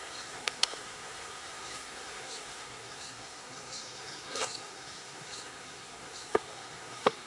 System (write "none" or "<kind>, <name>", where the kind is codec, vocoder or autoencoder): codec, SNAC